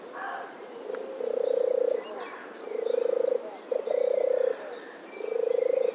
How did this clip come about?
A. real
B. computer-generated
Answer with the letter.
A